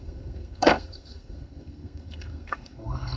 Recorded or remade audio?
remade